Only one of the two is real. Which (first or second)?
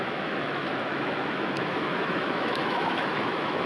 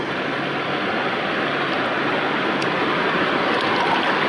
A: second